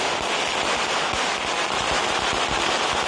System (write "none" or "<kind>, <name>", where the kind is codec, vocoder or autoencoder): none